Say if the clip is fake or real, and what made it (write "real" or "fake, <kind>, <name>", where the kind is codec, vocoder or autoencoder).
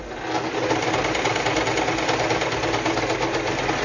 real